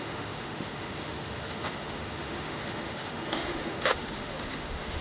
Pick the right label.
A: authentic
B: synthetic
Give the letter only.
B